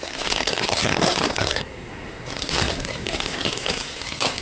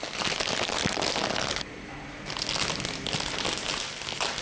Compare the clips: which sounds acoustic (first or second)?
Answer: second